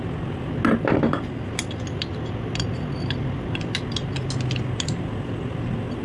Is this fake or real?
real